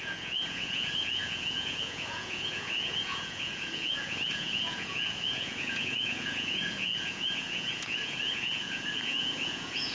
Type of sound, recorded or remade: remade